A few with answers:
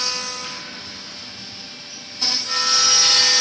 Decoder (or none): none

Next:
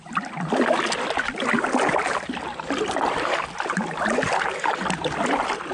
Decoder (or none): none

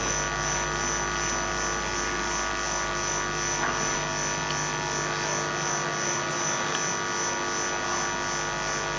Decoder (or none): none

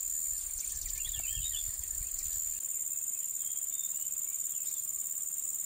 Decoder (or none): none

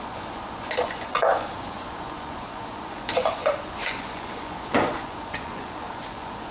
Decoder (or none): vocoder, Vocos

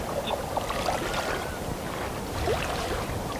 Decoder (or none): vocoder, BigVGAN v2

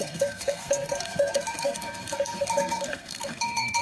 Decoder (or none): codec, SNAC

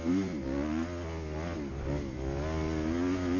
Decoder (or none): none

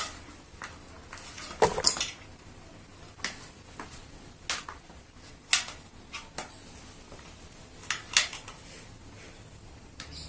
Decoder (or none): none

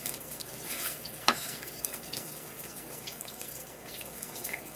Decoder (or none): codec, SNAC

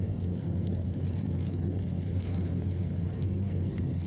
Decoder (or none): codec, SNAC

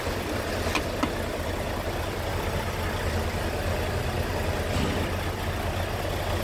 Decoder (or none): none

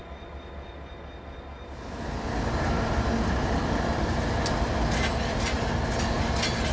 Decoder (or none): none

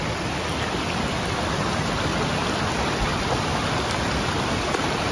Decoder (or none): none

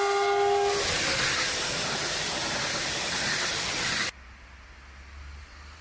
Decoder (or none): none